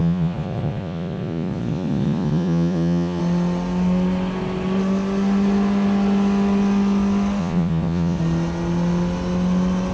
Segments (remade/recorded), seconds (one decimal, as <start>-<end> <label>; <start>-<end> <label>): 0.0-3.2 remade; 3.2-7.4 recorded; 7.4-8.2 remade; 8.2-9.9 recorded